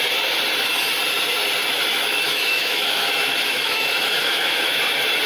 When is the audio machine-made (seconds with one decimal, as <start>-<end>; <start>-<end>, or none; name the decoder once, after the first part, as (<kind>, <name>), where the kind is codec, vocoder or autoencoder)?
1.9-4.8 (autoencoder, DAC-VAE)